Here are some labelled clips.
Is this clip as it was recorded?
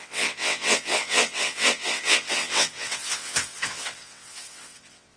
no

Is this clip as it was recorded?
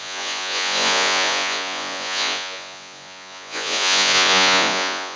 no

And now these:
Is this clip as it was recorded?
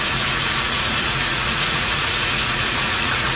no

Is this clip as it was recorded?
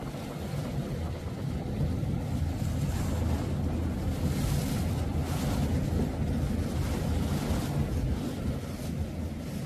yes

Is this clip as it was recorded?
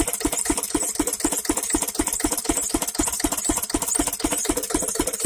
no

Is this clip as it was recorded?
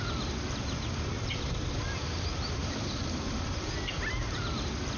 yes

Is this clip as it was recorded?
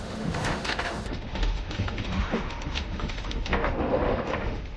no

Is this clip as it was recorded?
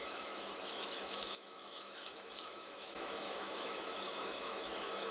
no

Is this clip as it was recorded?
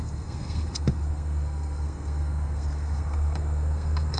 no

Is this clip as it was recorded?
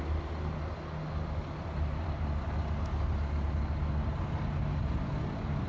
yes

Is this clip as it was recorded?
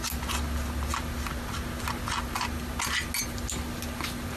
yes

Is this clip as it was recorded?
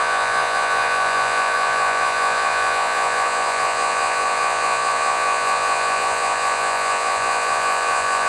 no